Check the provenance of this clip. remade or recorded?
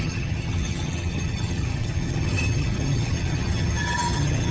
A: remade